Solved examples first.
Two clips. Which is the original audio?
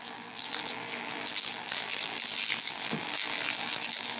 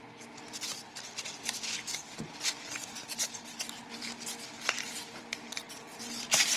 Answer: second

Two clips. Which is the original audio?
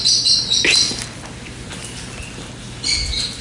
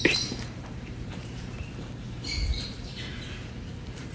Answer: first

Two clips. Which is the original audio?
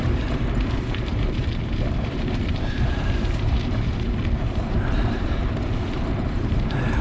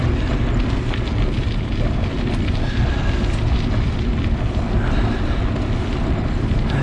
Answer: second